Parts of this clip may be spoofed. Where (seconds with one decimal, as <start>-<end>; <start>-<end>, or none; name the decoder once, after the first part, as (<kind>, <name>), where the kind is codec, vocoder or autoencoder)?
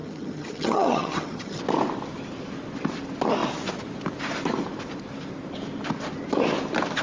0.0-1.6 (vocoder, HiFi-GAN)